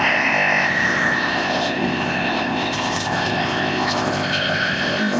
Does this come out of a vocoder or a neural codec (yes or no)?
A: yes